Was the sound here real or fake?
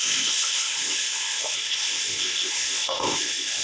fake